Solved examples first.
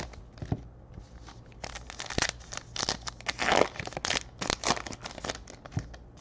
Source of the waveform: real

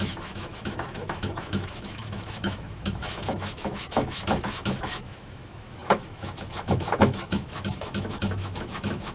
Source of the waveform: fake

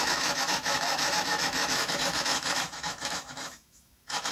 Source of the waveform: fake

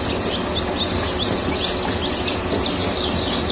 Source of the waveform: real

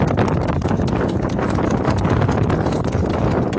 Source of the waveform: real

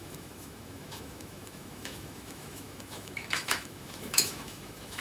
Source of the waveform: fake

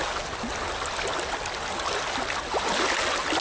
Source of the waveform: real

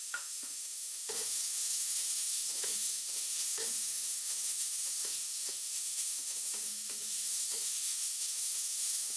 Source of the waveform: fake